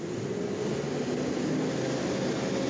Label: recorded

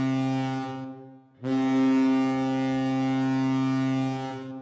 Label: recorded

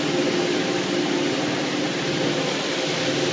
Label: recorded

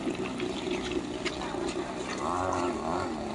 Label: recorded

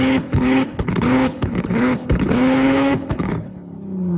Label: remade